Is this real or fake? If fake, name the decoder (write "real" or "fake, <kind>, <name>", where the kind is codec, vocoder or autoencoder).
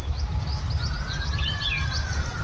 real